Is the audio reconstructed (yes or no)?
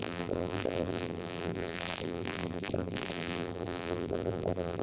yes